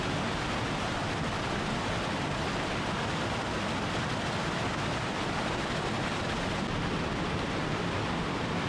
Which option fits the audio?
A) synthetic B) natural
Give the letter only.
B